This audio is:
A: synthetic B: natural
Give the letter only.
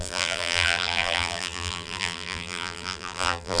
A